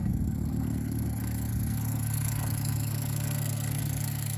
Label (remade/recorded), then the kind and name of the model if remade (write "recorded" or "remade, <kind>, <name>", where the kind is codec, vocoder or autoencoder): remade, codec, SNAC